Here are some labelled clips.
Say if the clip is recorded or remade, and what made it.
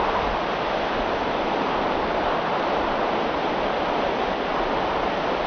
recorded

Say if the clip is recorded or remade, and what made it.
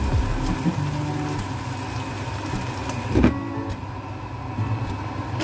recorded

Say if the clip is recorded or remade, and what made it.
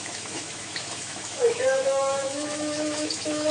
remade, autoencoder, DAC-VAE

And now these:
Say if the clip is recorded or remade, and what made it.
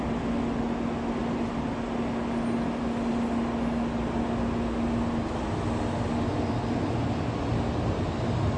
recorded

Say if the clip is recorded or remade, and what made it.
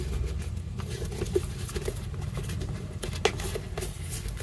recorded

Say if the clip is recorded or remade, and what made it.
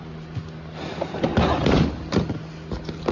recorded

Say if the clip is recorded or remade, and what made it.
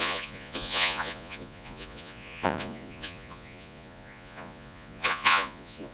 remade, vocoder, Vocos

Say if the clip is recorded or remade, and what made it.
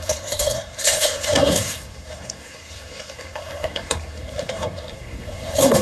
remade, codec, SNAC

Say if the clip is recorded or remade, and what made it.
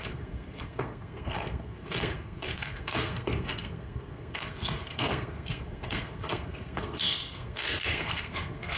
remade, codec, SNAC